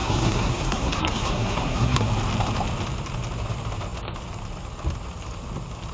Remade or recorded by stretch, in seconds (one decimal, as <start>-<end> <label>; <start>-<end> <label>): 0.0-2.1 remade; 2.1-5.9 recorded